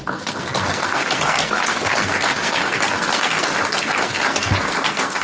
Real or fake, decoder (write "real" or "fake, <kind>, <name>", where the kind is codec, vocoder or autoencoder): fake, codec, SNAC